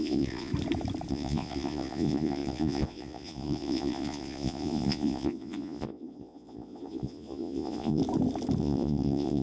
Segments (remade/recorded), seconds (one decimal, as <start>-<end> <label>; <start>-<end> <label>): 0.0-0.5 remade; 0.5-1.1 recorded; 1.1-8.0 remade; 8.0-8.6 recorded; 8.6-9.4 remade